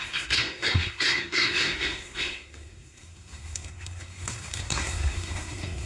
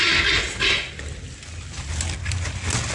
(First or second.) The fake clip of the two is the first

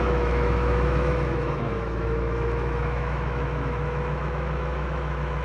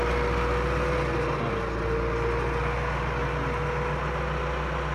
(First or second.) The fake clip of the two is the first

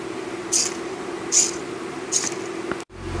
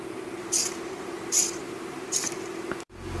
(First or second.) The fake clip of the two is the second